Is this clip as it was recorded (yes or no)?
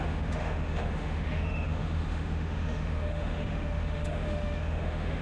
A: no